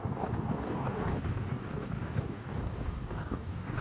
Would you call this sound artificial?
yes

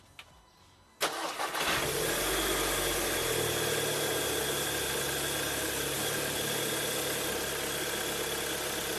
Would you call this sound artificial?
no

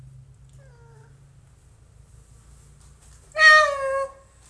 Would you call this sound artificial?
no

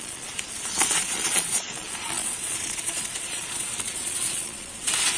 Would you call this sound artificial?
yes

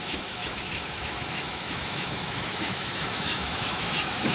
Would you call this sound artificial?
yes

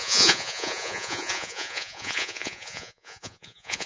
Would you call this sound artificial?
yes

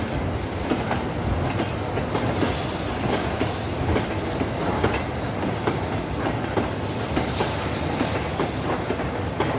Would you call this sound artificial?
no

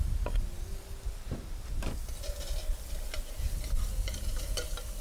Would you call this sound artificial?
no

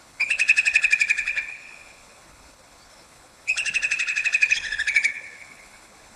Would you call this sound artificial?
yes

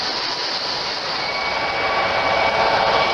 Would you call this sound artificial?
no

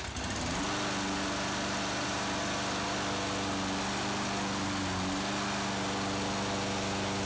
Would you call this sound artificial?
no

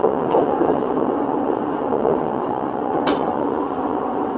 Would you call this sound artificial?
yes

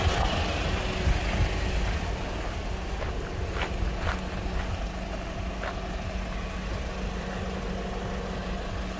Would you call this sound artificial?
no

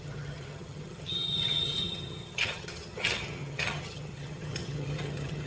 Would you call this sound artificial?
yes